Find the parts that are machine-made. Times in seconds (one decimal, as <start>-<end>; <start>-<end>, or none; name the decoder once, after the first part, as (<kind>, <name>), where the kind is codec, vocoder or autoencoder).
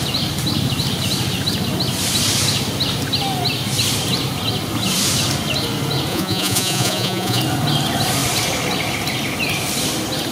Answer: 6.1-7.4 (vocoder, Vocos)